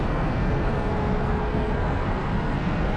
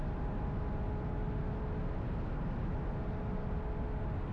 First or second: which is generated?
first